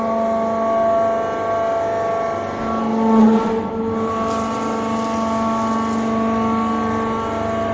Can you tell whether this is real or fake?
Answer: real